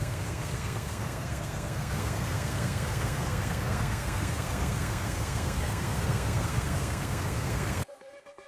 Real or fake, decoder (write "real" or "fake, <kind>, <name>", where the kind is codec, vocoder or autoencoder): fake, codec, SNAC